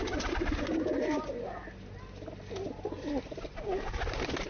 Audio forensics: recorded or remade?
recorded